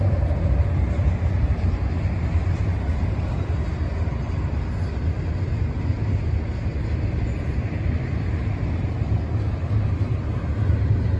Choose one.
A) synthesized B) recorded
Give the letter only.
B